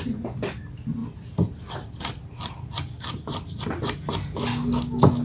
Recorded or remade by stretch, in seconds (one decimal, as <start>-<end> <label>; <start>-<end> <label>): 0.0-1.0 recorded; 1.0-4.1 remade; 4.1-5.2 recorded